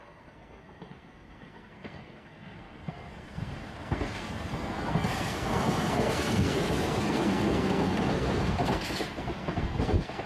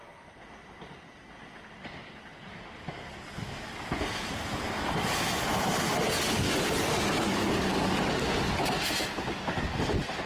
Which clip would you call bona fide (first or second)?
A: second